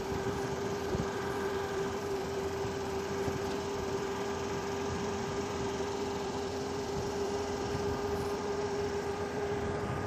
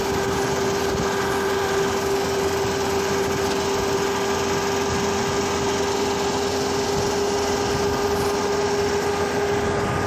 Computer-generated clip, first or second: first